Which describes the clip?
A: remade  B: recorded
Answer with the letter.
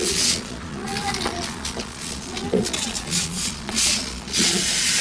A